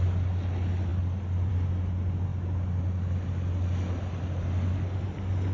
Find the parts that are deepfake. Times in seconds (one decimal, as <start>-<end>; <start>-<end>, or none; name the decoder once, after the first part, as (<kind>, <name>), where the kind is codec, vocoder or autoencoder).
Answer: none